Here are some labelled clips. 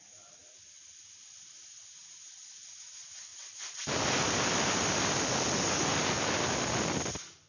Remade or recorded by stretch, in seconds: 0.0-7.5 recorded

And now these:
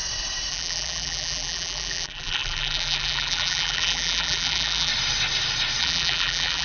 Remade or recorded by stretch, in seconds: 0.0-0.5 recorded; 0.5-4.9 remade; 4.9-5.8 recorded; 5.8-6.6 remade

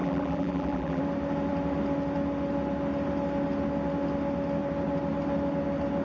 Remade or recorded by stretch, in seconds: 0.0-1.0 remade; 1.0-6.0 recorded

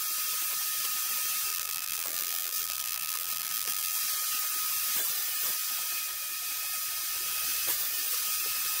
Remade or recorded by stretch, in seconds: 0.0-1.5 recorded; 1.5-4.0 remade; 4.0-8.8 recorded

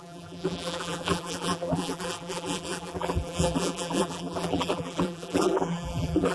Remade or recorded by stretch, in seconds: 0.0-6.3 remade

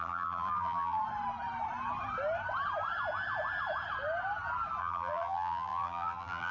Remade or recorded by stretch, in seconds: 0.0-1.0 remade; 1.0-4.8 recorded; 4.8-6.5 remade

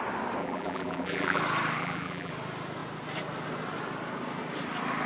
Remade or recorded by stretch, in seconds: 0.0-0.4 recorded; 0.4-1.4 remade; 1.4-1.8 recorded; 1.8-2.3 remade; 2.3-5.1 recorded